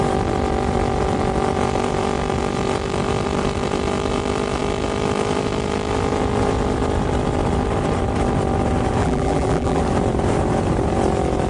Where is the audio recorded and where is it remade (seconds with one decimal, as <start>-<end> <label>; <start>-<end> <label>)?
0.0-9.0 recorded; 9.0-9.8 remade; 9.8-11.5 recorded